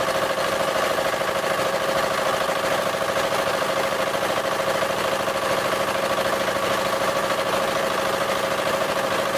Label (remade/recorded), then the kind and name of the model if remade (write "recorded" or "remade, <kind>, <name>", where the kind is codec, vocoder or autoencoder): remade, vocoder, BigVGAN v2